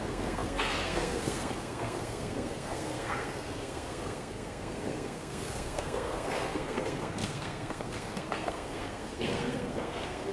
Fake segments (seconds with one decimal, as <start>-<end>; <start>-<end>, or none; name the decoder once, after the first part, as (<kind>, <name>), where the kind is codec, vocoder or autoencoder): 0.0-10.3 (codec, SNAC)